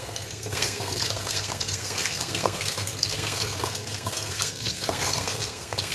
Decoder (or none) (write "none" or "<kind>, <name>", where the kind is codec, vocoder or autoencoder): codec, SNAC